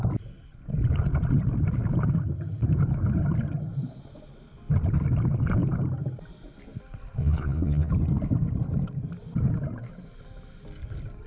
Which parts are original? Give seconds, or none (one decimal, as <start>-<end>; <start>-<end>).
0.0-7.2; 7.9-11.3